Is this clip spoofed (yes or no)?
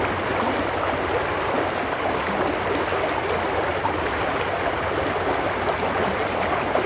no